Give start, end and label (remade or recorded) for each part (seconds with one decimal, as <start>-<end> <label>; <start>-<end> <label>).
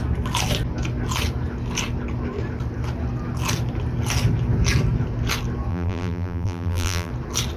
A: 0.0-5.7 recorded; 5.7-7.1 remade; 7.1-7.6 recorded